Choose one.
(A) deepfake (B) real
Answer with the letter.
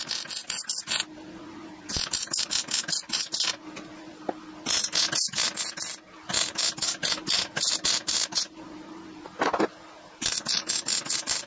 B